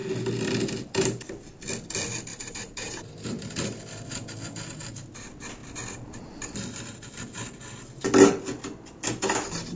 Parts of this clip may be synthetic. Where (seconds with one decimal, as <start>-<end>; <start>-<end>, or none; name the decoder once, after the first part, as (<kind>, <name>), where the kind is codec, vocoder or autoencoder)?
2.3-3.4 (vocoder, BigVGAN v2)